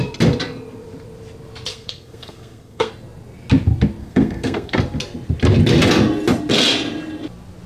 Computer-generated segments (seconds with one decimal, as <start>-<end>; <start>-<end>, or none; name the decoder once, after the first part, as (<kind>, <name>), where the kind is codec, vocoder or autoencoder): 1.7-2.9 (codec, SNAC); 4.0-4.8